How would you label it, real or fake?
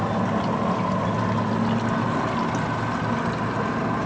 real